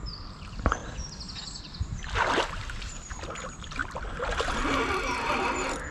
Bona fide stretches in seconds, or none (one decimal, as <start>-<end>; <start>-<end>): 0.0-3.8; 4.5-5.9